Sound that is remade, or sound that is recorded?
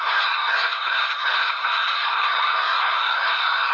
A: remade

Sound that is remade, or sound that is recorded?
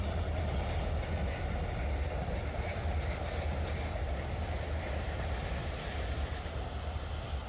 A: recorded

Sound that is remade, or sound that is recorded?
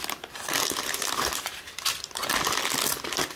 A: recorded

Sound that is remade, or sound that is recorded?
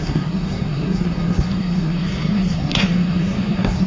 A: remade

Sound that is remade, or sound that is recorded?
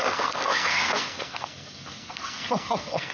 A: remade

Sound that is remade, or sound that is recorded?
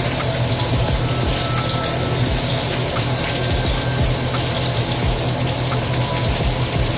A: recorded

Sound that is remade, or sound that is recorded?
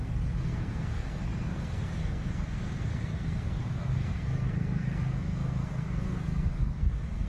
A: remade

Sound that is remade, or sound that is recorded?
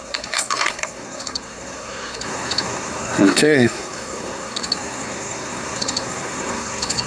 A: remade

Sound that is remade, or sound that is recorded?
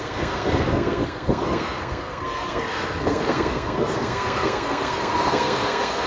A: remade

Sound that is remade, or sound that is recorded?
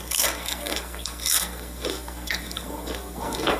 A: remade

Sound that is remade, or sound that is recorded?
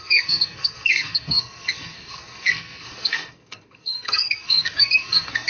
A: remade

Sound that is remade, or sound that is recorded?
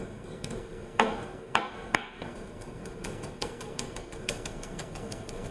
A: remade